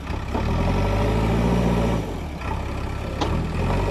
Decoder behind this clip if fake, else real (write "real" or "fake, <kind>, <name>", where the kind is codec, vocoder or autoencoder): real